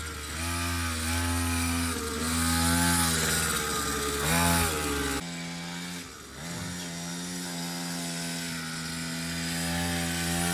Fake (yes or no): no